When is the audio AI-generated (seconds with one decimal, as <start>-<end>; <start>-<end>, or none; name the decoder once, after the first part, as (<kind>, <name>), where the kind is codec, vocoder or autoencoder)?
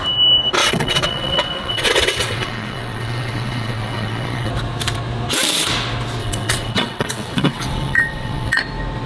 0.6-4.5 (vocoder, WaveNeXt); 6.2-8.6